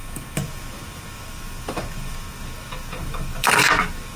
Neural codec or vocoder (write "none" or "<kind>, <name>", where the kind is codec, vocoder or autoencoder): codec, DAC